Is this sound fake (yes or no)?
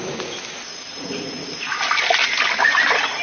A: no